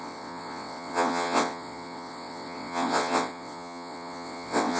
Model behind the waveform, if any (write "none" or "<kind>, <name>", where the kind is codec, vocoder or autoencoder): vocoder, WaveNeXt